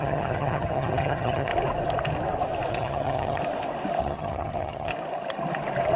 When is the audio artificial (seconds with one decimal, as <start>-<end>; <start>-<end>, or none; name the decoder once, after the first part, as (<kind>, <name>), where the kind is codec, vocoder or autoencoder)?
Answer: 0.0-1.5 (vocoder, HiFi-GAN); 2.7-3.4; 4.0-4.9